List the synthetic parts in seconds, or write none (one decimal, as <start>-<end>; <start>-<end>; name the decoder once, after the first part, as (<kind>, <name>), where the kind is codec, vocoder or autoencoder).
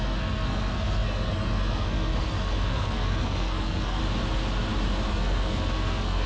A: 0.0-4.0 (codec, SNAC); 5.1-6.3